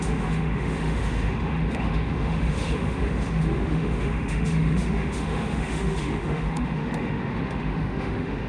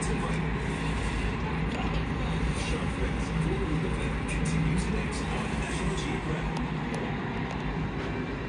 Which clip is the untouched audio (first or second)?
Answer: second